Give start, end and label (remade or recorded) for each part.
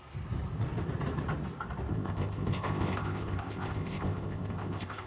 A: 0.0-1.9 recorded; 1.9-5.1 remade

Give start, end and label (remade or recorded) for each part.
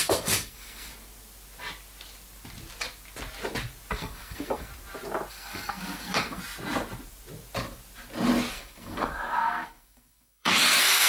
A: 0.0-0.9 remade; 0.9-3.9 recorded; 3.9-4.7 remade; 4.7-5.3 recorded; 5.3-6.4 remade; 6.4-8.5 recorded; 8.5-11.1 remade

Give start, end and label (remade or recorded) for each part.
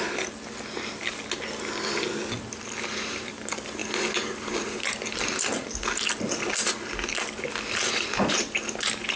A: 0.0-9.2 recorded